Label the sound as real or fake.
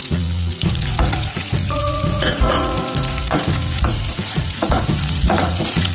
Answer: fake